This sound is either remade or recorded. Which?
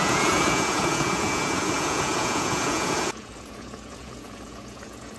remade